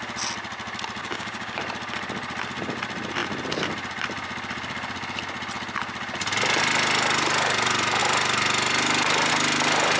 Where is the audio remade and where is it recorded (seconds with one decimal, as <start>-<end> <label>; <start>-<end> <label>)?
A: 0.0-1.0 recorded; 1.0-1.6 remade; 1.6-10.0 recorded